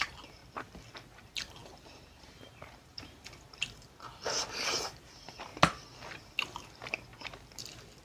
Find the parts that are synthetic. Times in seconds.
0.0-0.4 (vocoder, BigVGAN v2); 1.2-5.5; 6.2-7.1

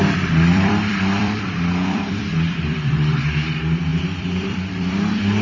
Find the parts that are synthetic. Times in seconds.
0.0-3.2 (vocoder, BigVGAN v2); 3.9-5.4

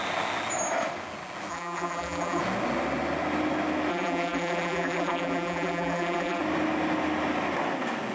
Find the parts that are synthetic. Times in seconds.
1.5-2.4 (vocoder, BigVGAN v2); 3.9-6.4

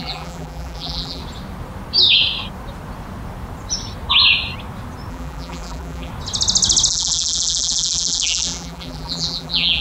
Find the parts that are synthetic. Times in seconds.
0.0-1.2 (vocoder, BigVGAN v2); 5.1-6.1; 6.9-9.8

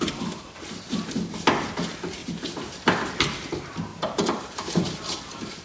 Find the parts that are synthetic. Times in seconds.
2.2-3.5 (vocoder, BigVGAN v2); 3.9-4.7

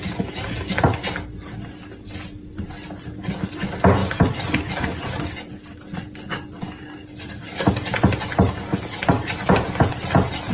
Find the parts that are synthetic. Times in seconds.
4.0-4.7 (vocoder, BigVGAN v2)

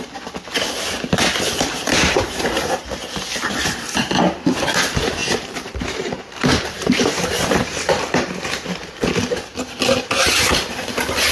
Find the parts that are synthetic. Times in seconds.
1.8-4.3 (vocoder, BigVGAN v2); 5.2-8.1